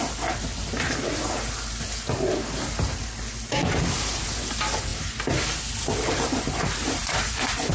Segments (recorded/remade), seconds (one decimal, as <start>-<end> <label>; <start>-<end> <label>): 0.0-7.0 recorded; 7.0-7.7 remade